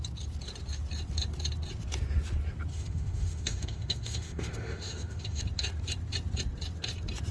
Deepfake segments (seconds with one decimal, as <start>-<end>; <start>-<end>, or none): 2.7-5.4